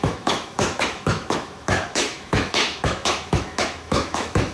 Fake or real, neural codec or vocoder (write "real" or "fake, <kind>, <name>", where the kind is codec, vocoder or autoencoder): fake, autoencoder, DAC-VAE